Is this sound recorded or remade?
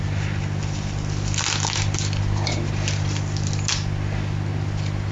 recorded